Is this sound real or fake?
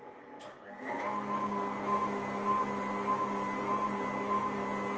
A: real